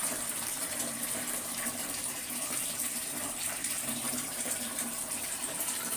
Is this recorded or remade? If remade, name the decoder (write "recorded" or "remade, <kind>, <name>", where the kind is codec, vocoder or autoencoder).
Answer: remade, vocoder, BigVGAN v2